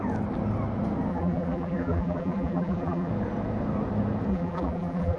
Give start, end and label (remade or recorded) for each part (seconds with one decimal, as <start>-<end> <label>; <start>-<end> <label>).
0.0-1.1 recorded; 1.1-3.1 remade; 3.1-4.3 recorded; 4.3-5.2 remade